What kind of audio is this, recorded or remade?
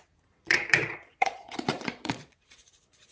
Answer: remade